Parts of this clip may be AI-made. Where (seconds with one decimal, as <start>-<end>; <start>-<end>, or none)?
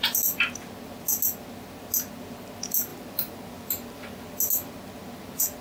none